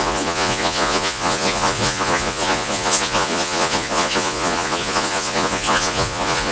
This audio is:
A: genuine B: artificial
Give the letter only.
B